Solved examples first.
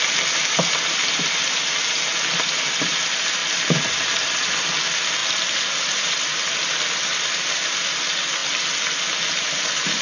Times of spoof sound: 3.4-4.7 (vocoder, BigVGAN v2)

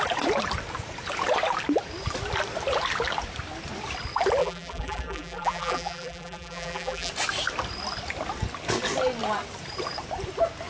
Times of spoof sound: 4.4-7.1 (vocoder, BigVGAN v2)

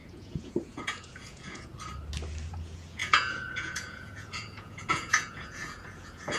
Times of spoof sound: 0.0-1.7 (vocoder, Vocos); 2.5-6.4

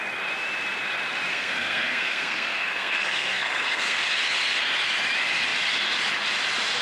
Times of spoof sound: 1.3-4.0 (codec, SNAC)

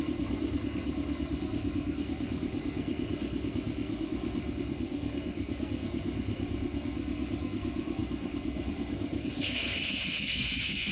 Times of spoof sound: 0.0-10.9 (codec, SNAC)

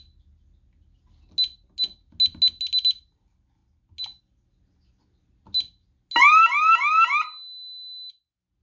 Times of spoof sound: none

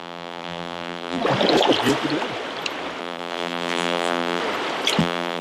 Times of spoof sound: 0.0-1.2 (vocoder, BigVGAN v2); 3.0-4.4; 5.0-5.4